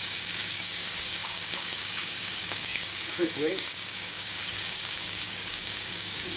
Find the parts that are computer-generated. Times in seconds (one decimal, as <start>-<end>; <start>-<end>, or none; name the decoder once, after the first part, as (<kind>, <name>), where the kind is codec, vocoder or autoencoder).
0.0-6.4 (codec, DAC)